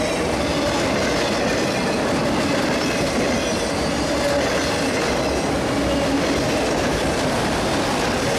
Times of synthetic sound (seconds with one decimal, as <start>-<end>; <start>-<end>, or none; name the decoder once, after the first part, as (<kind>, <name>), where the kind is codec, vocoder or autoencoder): none